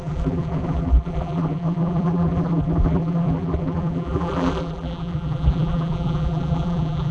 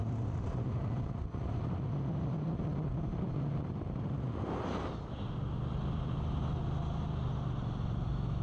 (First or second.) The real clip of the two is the second